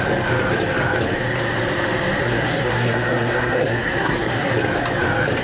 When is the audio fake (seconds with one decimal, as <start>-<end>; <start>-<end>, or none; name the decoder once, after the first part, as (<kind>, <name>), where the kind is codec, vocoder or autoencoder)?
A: 2.2-4.5 (codec, SNAC)